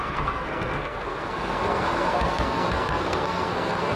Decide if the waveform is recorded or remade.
remade